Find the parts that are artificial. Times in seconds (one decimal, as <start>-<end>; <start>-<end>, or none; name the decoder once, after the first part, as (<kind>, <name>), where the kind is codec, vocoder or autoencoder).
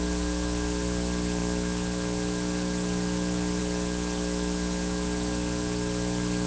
none